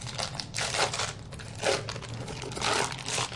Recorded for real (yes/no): no